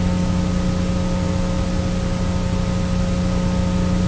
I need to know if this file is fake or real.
real